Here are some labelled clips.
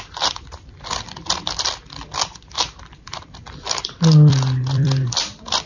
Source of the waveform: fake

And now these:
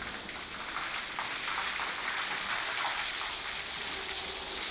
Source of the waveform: real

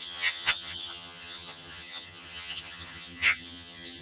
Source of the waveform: fake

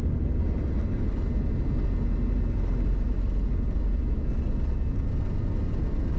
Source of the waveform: real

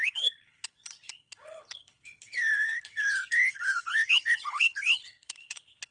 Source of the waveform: fake